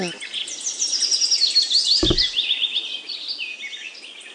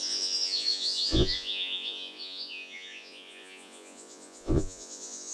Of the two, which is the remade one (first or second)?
second